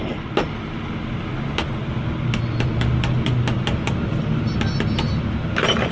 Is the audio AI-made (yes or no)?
no